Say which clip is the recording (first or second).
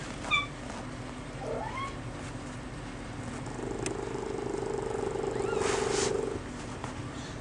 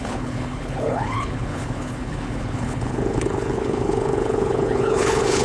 first